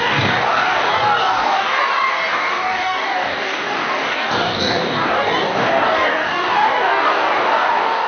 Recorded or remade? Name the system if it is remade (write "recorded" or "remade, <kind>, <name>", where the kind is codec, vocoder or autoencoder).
remade, codec, DAC